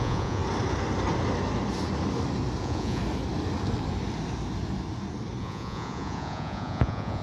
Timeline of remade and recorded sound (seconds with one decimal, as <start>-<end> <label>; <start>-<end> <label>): 0.0-0.4 remade; 0.4-2.6 recorded; 2.6-3.0 remade; 3.0-5.4 recorded; 5.4-7.2 remade